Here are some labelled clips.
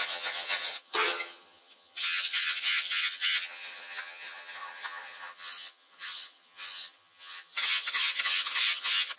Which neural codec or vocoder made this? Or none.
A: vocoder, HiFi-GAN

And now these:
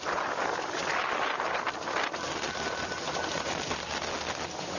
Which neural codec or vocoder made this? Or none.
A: none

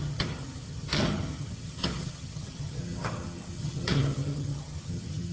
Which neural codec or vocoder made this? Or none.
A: vocoder, HiFi-GAN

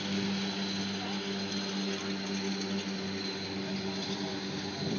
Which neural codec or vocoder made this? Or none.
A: none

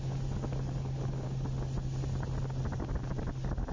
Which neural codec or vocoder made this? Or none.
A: none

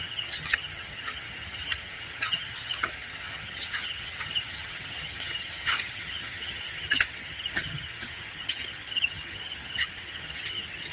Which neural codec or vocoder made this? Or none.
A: vocoder, HiFi-GAN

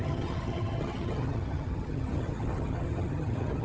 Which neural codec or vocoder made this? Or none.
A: vocoder, HiFi-GAN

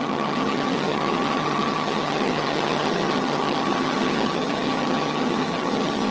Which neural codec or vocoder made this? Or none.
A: vocoder, HiFi-GAN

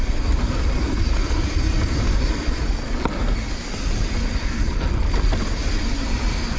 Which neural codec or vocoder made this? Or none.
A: none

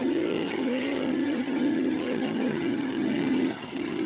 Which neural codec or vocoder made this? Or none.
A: vocoder, HiFi-GAN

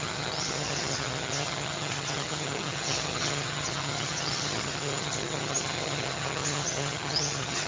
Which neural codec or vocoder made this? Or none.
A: vocoder, HiFi-GAN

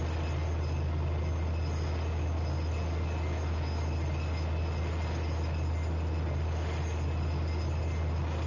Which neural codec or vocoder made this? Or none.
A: none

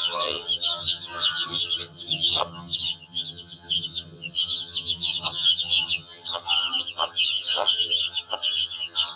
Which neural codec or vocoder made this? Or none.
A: vocoder, HiFi-GAN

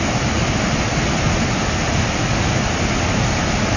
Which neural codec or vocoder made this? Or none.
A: none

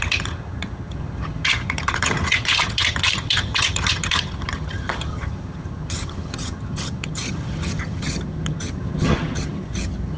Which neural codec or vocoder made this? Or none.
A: vocoder, HiFi-GAN